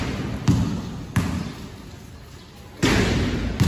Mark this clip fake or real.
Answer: real